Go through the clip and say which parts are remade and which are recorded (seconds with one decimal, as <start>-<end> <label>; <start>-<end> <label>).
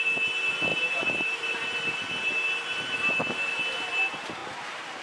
0.0-0.7 recorded; 0.7-3.5 remade; 3.5-5.0 recorded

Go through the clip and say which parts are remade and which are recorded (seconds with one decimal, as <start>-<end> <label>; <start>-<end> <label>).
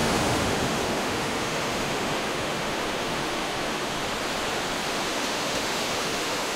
0.0-4.0 remade; 4.0-4.9 recorded; 4.9-6.6 remade